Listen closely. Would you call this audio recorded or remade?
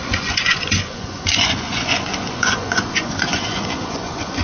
remade